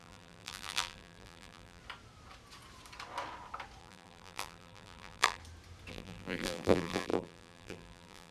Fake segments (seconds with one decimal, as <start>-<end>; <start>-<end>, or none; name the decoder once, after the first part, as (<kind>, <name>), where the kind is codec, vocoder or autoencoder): 0.0-1.8 (vocoder, BigVGAN v2); 3.8-5.4; 5.9-8.3